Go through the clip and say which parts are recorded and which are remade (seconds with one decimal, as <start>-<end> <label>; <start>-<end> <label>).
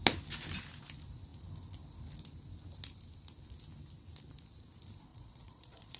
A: 0.0-5.1 recorded; 5.1-6.0 remade